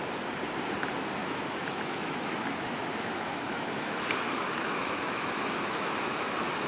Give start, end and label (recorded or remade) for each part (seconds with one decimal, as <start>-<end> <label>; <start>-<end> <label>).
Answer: 0.0-1.2 recorded; 1.2-4.0 remade; 4.0-4.4 recorded; 4.4-6.7 remade

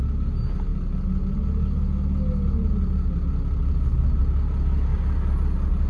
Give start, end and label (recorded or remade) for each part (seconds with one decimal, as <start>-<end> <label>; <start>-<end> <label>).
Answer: 0.0-5.9 recorded

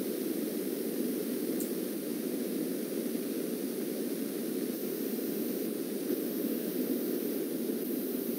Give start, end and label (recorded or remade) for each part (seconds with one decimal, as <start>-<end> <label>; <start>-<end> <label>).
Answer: 0.0-6.2 recorded; 6.2-6.7 remade; 6.7-8.4 recorded

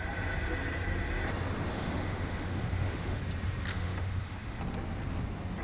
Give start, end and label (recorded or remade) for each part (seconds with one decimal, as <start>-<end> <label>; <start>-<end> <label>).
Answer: 0.0-1.7 recorded; 1.7-3.2 remade; 3.2-3.7 recorded; 3.7-4.6 remade; 4.6-5.6 recorded

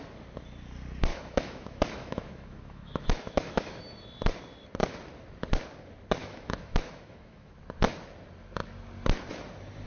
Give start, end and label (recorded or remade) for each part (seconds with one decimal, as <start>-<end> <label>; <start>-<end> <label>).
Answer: 0.0-1.1 recorded; 1.1-3.8 remade; 3.8-6.2 recorded; 6.2-7.5 remade; 7.5-9.9 recorded